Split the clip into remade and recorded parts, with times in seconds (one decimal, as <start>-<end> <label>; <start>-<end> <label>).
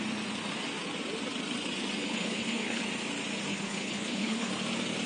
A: 0.0-2.0 recorded; 2.0-2.8 remade; 2.8-3.5 recorded; 3.5-4.5 remade; 4.5-5.1 recorded